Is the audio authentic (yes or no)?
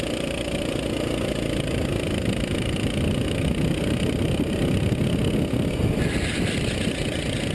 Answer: yes